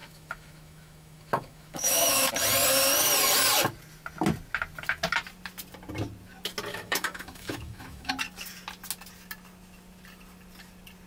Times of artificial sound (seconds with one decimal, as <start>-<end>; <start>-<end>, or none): 0.0-2.3; 6.7-8.1